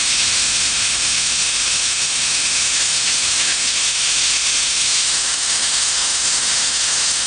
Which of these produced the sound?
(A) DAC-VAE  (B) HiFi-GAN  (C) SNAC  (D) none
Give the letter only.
A